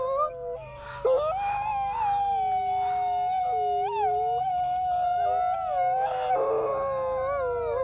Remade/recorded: recorded